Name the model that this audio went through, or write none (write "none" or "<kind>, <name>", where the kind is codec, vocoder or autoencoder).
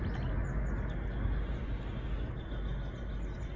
none